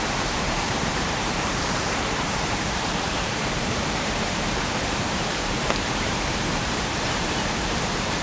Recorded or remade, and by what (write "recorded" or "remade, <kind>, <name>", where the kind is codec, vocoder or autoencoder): remade, vocoder, BigVGAN v2